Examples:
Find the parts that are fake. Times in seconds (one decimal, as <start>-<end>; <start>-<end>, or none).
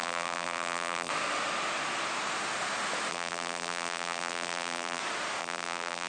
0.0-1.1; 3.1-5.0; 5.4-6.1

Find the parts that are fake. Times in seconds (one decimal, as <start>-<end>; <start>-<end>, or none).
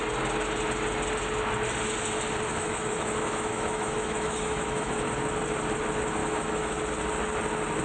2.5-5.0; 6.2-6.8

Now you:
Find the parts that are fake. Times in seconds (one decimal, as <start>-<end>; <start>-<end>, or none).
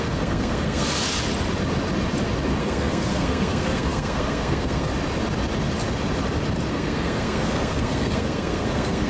0.0-0.9; 2.6-4.9; 6.7-9.1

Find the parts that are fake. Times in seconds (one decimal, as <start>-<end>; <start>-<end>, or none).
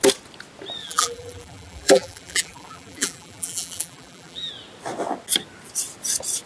0.8-4.5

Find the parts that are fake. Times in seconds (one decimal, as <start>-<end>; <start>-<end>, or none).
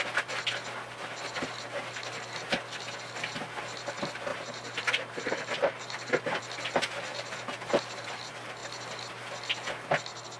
4.3-6.4; 7.1-8.2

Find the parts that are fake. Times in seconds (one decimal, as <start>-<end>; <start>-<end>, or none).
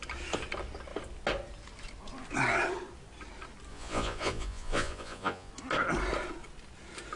3.7-5.5